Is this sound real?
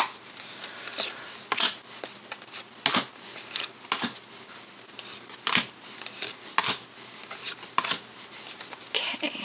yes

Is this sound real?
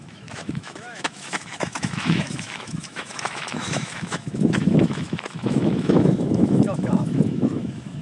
no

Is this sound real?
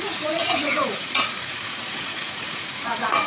no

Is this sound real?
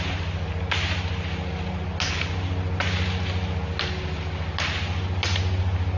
yes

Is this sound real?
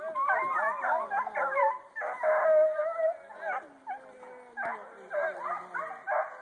yes